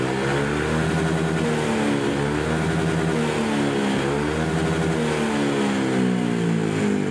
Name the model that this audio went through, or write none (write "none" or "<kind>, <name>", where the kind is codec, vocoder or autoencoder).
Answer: none